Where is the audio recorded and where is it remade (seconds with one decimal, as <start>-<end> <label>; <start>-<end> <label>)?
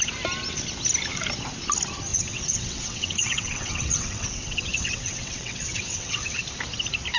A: 0.0-2.1 recorded; 2.1-6.4 remade; 6.4-7.2 recorded